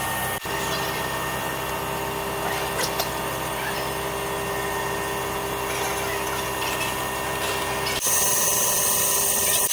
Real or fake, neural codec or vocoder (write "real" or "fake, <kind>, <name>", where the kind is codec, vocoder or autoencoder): real